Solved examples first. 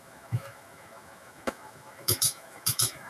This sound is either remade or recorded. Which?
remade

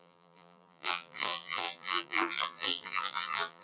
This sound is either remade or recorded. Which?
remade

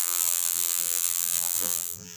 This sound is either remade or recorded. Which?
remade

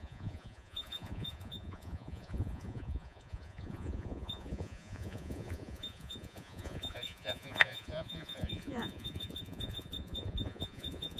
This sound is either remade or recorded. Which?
remade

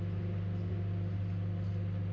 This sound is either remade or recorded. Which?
recorded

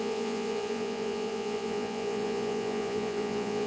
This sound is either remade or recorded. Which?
remade